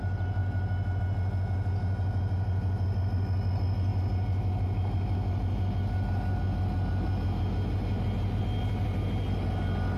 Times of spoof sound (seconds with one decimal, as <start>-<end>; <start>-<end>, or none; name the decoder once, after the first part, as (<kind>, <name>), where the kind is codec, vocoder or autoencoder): none